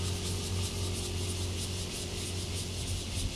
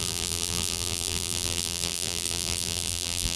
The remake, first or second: second